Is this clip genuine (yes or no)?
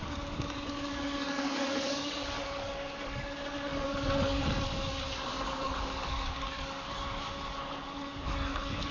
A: no